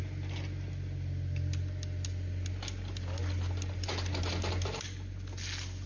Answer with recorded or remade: recorded